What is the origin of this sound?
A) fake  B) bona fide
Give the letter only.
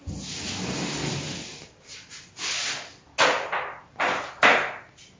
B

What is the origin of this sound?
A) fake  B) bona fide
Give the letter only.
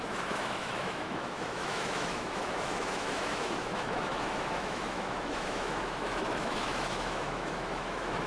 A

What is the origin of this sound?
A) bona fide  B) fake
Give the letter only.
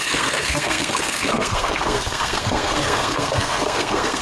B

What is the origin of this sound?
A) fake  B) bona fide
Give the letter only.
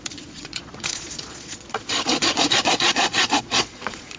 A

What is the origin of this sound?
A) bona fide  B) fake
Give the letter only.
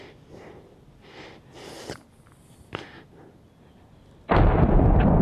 A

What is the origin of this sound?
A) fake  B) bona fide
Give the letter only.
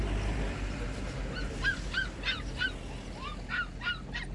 B